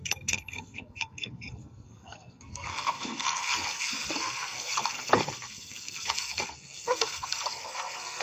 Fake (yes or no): yes